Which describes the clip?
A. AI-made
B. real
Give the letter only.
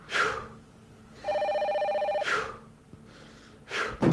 B